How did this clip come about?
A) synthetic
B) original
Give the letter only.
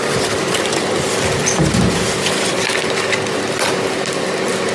B